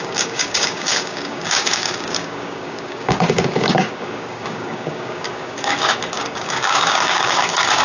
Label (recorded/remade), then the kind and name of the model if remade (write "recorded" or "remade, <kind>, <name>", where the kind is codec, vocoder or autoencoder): remade, codec, DAC